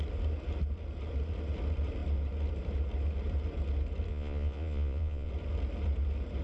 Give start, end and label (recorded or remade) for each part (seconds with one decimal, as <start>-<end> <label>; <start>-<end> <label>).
0.0-4.1 recorded; 4.1-5.3 remade; 5.3-6.4 recorded